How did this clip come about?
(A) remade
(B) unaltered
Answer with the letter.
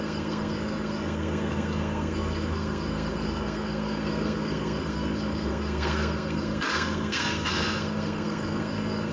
A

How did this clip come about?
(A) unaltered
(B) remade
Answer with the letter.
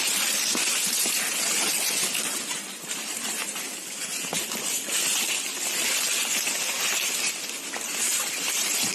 A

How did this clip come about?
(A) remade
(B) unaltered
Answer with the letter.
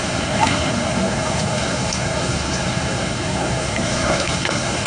A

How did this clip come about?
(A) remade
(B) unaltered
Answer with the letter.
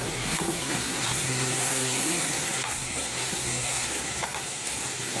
A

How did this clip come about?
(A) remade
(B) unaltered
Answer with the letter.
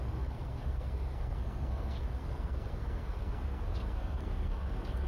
A